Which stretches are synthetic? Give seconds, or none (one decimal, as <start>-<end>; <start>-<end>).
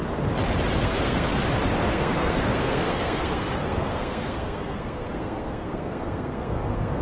0.8-1.3; 1.9-7.0